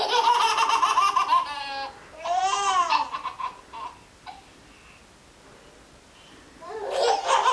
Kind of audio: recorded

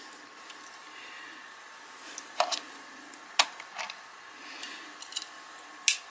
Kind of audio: recorded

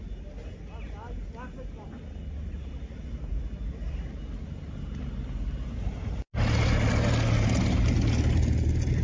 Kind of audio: recorded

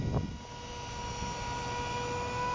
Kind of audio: recorded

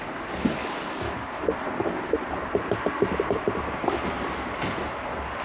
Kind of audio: recorded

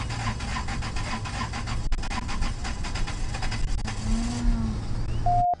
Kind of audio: recorded